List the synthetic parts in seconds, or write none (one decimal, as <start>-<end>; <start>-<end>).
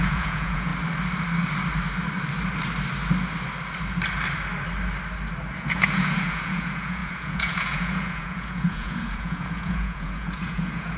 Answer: 0.0-0.7; 5.5-11.0